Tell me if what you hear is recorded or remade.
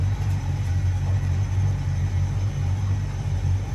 remade